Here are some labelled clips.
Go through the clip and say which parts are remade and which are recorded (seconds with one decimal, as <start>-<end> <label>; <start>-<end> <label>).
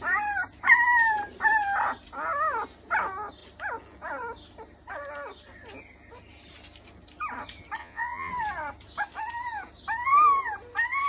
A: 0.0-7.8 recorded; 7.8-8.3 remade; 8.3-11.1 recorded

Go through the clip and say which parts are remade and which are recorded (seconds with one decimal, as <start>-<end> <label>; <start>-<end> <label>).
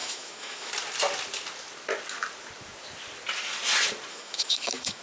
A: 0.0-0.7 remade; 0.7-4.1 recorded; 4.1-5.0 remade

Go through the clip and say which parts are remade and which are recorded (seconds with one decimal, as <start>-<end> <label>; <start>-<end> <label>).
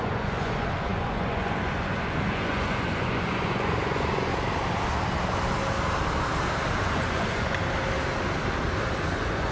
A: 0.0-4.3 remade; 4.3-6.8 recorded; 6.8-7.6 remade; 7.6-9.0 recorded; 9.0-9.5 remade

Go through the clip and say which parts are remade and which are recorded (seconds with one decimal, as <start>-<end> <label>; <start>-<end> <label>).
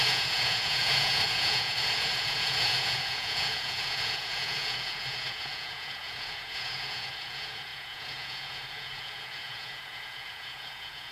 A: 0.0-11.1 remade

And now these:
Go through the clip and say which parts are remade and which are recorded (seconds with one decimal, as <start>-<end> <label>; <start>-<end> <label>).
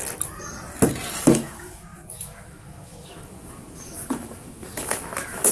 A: 0.0-1.3 recorded; 1.3-5.5 remade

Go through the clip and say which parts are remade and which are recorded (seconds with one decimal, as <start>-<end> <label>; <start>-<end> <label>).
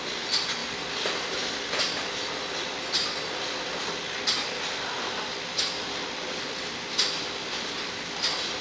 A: 0.0-8.6 recorded